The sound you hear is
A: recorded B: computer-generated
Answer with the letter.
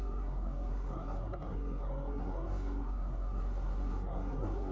B